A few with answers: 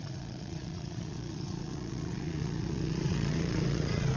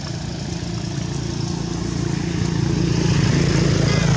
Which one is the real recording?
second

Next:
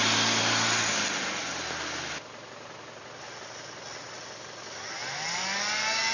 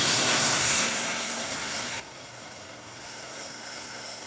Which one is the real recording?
first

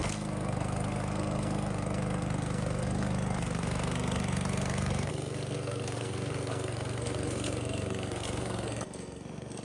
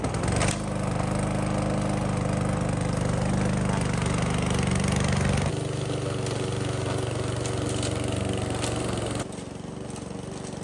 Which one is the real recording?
second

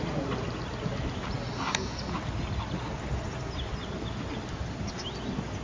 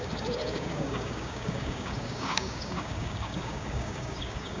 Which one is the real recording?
first